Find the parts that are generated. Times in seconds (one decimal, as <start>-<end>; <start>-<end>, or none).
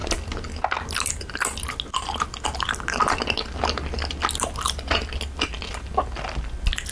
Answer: none